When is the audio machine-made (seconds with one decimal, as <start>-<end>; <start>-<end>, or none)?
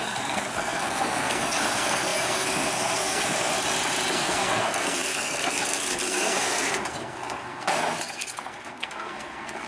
0.0-3.5; 4.1-9.7